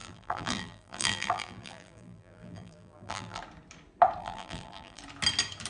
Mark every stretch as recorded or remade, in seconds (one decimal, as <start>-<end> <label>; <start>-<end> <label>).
0.0-3.4 remade; 3.4-4.2 recorded; 4.2-5.0 remade; 5.0-5.7 recorded